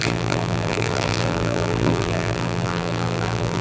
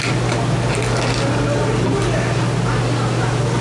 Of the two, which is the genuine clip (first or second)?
second